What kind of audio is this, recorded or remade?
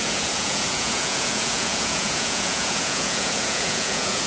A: remade